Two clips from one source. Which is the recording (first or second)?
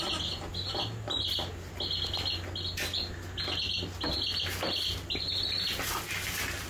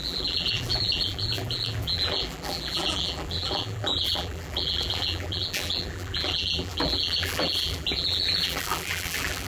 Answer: first